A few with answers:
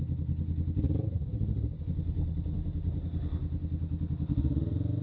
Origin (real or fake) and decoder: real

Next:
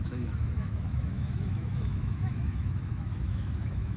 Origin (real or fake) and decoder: fake, autoencoder, DAC-VAE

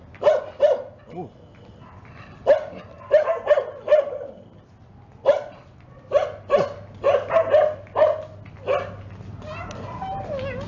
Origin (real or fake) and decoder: real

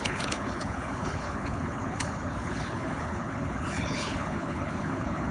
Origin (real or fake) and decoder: fake, codec, HILCodec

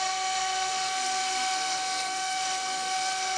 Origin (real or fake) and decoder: fake, codec, SNAC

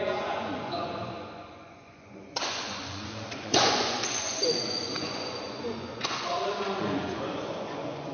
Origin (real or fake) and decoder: fake, vocoder, Vocos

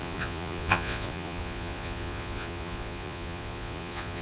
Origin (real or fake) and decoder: fake, vocoder, Vocos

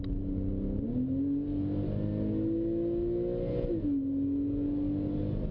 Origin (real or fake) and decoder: real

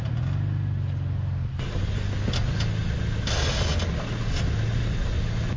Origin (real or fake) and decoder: real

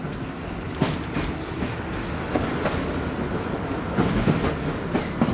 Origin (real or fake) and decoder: real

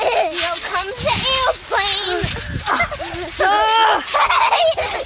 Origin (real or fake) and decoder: real